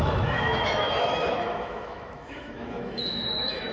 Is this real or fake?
fake